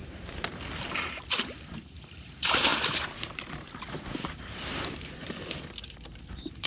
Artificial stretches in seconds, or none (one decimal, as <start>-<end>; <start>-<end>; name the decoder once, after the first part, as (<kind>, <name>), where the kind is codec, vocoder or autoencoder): 0.0-6.7 (vocoder, BigVGAN v2)